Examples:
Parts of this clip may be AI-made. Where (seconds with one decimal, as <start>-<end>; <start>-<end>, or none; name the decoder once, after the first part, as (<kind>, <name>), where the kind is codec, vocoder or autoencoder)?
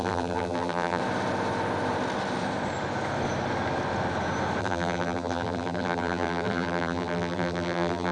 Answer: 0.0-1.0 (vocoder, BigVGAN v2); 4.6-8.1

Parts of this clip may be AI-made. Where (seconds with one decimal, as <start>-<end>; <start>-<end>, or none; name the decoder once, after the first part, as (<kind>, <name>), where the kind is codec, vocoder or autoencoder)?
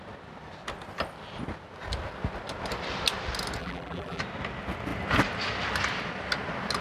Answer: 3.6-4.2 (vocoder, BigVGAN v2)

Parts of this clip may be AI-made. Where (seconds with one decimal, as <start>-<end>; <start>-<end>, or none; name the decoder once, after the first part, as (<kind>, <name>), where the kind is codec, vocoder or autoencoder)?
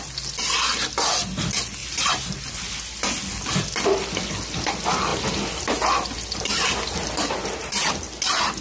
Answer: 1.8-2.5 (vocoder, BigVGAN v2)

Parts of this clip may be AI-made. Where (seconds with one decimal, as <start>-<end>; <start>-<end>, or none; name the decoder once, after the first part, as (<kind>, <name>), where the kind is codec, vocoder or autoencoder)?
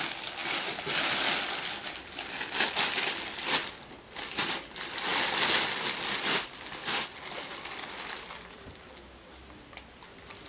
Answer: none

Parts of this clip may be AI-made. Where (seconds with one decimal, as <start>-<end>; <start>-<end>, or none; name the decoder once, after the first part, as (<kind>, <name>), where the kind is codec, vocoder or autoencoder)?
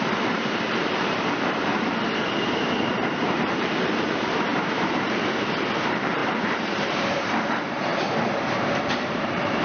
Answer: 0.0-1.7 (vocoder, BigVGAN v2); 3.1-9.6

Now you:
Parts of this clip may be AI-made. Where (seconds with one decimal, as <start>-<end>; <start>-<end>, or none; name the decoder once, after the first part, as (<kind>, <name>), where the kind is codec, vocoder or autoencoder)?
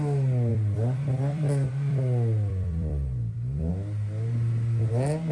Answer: 0.5-3.7 (vocoder, BigVGAN v2)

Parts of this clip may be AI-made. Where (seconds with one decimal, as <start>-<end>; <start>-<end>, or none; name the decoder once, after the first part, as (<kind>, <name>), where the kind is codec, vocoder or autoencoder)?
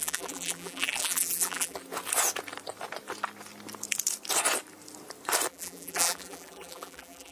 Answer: 0.0-1.8 (vocoder, BigVGAN v2); 5.5-7.3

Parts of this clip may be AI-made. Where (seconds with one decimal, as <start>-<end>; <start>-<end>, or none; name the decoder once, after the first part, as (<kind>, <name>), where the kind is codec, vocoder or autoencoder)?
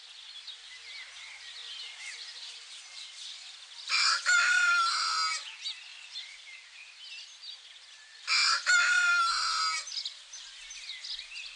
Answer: 1.6-4.9 (vocoder, BigVGAN v2); 5.9-6.8